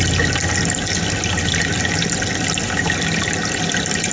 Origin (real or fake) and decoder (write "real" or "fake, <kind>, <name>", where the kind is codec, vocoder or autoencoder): real